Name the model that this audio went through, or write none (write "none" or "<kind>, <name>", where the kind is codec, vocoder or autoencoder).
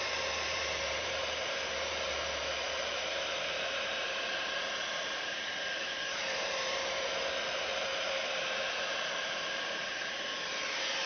vocoder, BigVGAN v2